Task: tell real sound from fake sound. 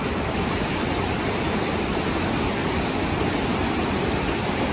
real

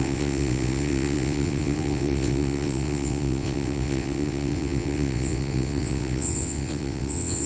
fake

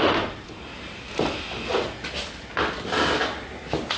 real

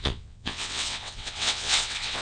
fake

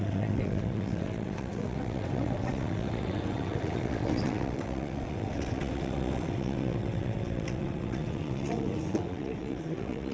fake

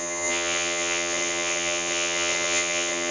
fake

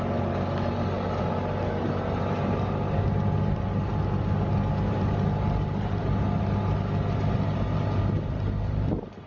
real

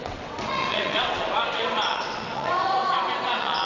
fake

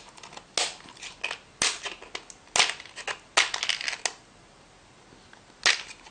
real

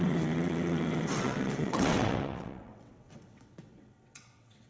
fake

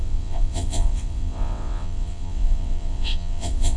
fake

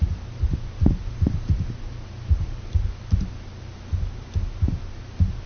real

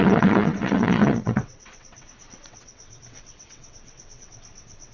fake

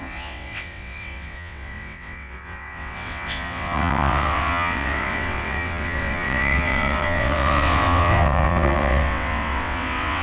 fake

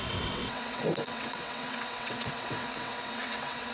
fake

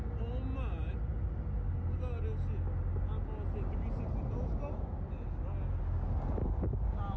real